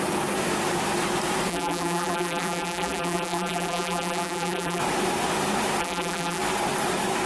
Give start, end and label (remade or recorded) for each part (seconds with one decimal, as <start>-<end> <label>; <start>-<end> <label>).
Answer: 0.0-1.5 recorded; 1.5-4.8 remade; 4.8-5.8 recorded; 5.8-6.4 remade; 6.4-7.3 recorded